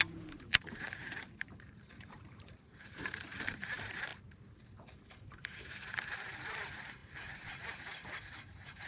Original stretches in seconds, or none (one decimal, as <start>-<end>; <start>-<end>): 4.1-5.0